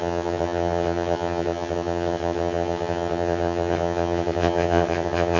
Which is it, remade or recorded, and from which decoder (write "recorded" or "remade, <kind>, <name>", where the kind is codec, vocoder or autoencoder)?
remade, vocoder, HiFi-GAN